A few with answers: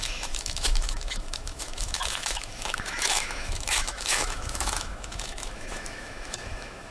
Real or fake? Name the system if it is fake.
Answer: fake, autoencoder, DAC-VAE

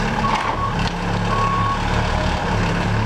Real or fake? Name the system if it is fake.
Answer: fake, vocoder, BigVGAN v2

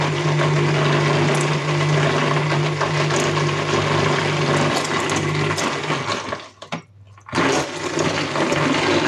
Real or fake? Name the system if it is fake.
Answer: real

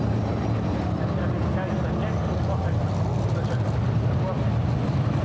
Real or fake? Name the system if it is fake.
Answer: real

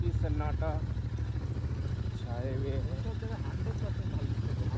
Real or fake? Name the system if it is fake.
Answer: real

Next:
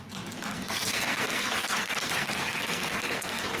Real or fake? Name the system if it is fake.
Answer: fake, codec, SNAC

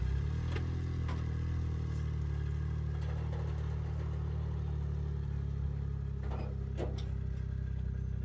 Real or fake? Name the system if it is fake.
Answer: real